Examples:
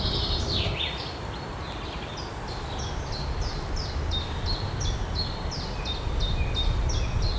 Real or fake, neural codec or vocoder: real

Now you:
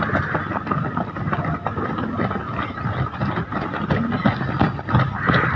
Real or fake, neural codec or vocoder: real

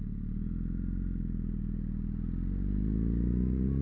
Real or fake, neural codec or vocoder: real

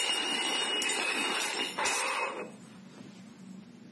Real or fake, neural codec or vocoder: real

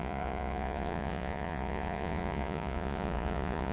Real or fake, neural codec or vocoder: fake, vocoder, Vocos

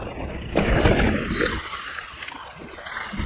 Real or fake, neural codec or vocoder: real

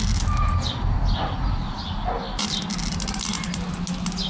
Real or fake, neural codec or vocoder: real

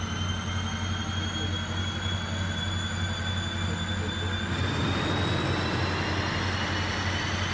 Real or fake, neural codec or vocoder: real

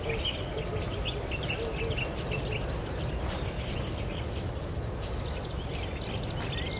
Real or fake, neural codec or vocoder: real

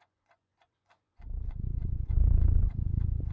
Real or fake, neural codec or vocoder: fake, vocoder, Vocos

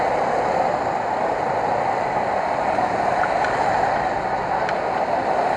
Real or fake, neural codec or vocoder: real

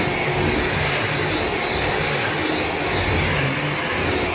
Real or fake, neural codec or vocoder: real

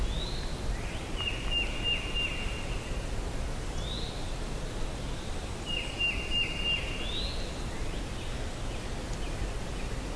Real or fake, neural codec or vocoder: real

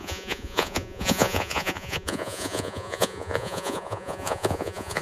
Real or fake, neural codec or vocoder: fake, vocoder, Vocos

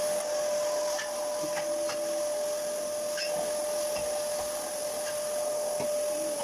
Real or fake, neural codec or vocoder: real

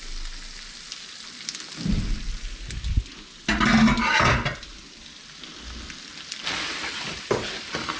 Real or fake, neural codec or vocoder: real